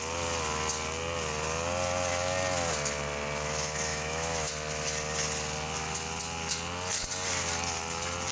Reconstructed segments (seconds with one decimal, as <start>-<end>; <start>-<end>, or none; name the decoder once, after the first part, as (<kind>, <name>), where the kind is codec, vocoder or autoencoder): 3.9-4.5 (autoencoder, DAC-VAE)